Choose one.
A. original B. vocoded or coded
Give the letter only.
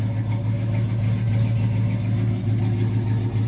A